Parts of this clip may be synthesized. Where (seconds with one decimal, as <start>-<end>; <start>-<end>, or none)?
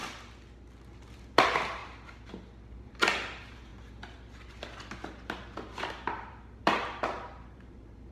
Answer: 0.8-1.8; 2.7-3.7; 5.8-8.1